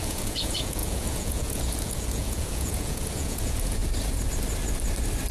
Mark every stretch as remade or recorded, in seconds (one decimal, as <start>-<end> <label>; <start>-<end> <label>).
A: 0.0-3.8 remade; 3.8-5.3 recorded